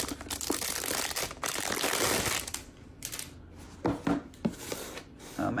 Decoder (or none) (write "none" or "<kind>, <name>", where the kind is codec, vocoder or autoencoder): none